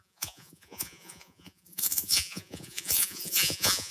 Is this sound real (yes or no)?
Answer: no